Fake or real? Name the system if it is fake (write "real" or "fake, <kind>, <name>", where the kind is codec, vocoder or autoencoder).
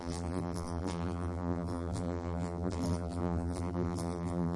fake, vocoder, BigVGAN v2